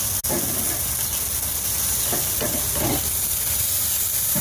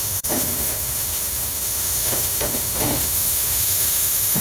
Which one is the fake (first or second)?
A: second